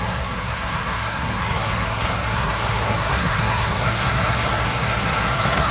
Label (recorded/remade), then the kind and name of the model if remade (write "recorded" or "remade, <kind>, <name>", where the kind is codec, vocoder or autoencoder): remade, codec, SNAC